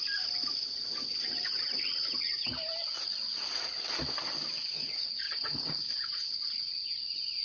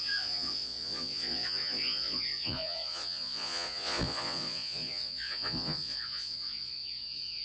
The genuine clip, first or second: first